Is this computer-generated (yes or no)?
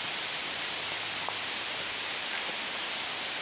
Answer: no